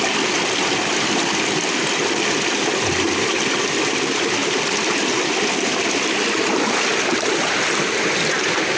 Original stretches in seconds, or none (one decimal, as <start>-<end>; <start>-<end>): 0.0-8.8